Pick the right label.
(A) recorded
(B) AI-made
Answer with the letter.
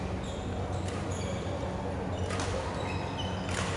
A